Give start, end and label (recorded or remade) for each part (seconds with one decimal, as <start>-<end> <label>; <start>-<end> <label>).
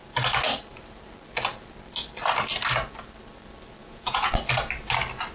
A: 0.0-3.8 recorded; 3.8-4.3 remade; 4.3-5.3 recorded